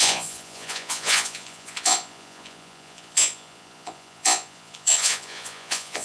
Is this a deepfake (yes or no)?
yes